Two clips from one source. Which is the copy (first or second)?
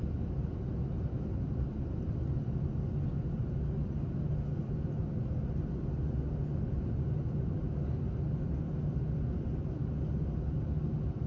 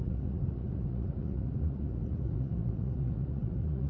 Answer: second